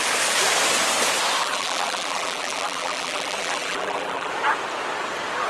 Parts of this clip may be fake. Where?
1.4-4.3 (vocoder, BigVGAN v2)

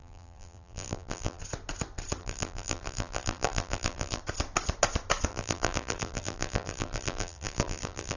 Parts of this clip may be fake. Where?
0.0-1.4 (vocoder, BigVGAN v2); 2.2-4.2; 5.3-8.2

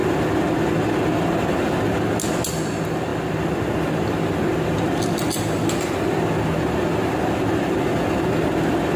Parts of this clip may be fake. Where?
none

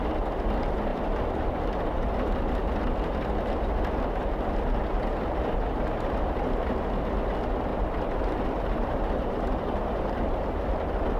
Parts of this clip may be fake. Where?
7.7-10.7 (vocoder, BigVGAN v2)